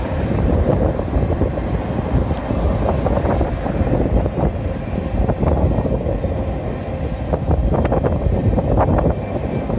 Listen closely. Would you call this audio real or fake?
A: real